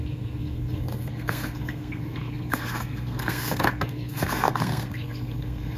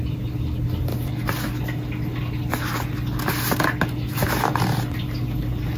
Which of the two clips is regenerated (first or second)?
first